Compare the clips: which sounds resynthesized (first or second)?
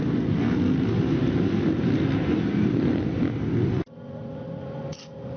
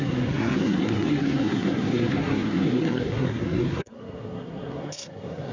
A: second